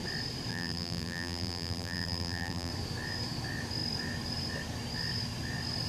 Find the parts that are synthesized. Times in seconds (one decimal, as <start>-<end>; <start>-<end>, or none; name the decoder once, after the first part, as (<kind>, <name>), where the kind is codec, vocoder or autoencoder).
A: 0.5-2.7 (vocoder, BigVGAN v2)